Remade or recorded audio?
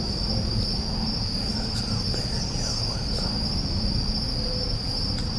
recorded